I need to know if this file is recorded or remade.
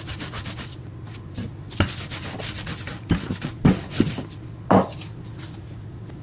recorded